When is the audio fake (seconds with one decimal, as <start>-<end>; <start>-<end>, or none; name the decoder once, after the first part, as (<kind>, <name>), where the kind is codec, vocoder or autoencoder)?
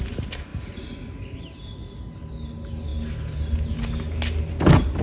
none